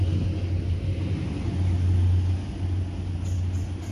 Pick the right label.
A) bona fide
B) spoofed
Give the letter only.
A